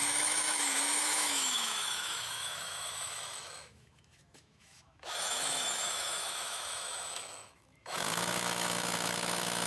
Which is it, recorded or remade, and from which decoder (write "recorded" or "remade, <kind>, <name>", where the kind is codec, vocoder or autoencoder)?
remade, autoencoder, DAC-VAE